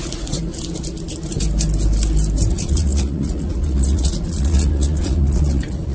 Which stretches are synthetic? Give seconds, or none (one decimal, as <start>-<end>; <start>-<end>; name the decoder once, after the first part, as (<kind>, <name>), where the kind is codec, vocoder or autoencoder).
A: 0.0-0.5 (vocoder, Vocos); 2.5-5.9